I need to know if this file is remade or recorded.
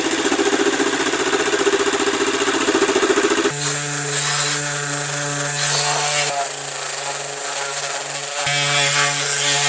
recorded